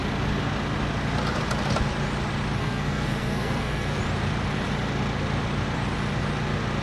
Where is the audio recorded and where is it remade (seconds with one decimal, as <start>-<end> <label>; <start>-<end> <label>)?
0.0-2.6 recorded; 2.6-4.0 remade; 4.0-6.8 recorded